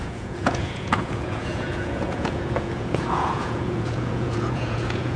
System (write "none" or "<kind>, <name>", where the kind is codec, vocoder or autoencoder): vocoder, Vocos